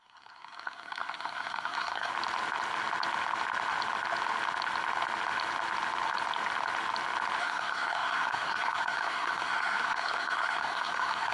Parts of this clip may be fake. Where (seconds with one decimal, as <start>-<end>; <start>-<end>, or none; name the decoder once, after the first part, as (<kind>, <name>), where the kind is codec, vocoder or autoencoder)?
0.0-2.1 (codec, SNAC); 7.4-11.3